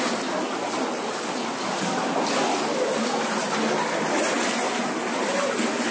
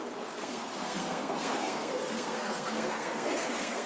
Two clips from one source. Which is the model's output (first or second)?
second